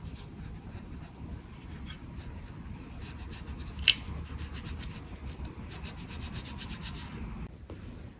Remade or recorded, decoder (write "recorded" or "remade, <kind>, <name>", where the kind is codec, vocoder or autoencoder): recorded